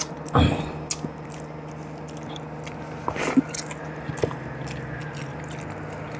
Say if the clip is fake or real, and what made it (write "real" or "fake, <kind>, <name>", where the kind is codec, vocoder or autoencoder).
real